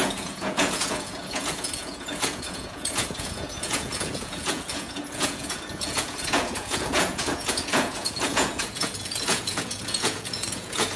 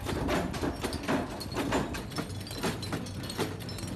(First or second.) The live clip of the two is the second